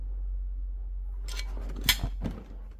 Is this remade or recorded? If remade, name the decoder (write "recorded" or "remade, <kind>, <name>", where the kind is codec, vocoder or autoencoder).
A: recorded